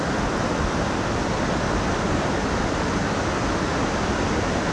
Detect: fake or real real